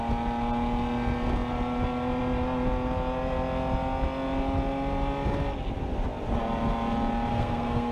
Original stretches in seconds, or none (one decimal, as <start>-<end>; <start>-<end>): 0.0-7.3